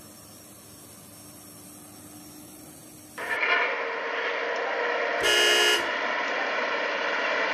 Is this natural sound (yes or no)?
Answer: yes